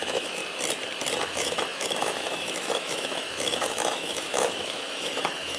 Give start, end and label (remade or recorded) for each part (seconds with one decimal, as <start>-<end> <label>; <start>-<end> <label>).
0.0-0.4 remade; 0.4-1.2 recorded; 1.2-5.6 remade

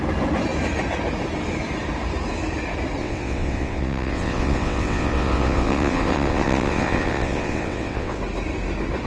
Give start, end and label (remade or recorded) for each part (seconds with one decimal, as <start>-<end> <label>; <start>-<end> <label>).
0.0-3.0 recorded; 3.0-8.2 remade; 8.2-9.1 recorded

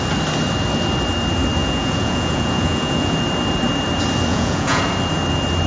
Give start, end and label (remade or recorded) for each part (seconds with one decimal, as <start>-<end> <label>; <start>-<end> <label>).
0.0-1.6 recorded; 1.6-3.2 remade; 3.2-4.3 recorded; 4.3-4.8 remade; 4.8-5.7 recorded

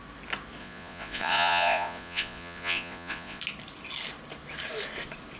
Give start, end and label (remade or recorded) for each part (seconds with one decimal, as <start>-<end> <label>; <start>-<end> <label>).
0.0-0.6 recorded; 0.6-3.4 remade; 3.4-5.4 recorded

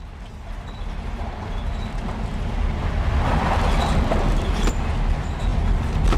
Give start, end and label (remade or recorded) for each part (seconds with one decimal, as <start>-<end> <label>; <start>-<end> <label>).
0.0-6.2 recorded

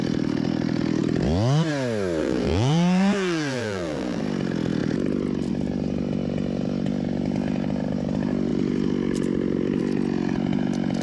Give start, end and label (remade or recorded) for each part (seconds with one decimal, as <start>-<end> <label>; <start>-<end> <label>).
0.0-2.2 recorded; 2.2-4.2 remade; 4.2-11.0 recorded